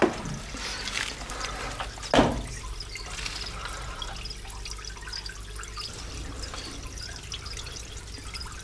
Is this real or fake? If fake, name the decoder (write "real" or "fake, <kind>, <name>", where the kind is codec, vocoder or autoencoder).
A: real